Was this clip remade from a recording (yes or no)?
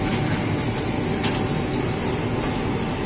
no